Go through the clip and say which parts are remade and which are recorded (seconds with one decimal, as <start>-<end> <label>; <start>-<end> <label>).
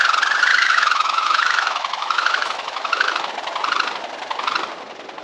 0.0-0.5 recorded; 0.5-3.3 remade; 3.3-5.2 recorded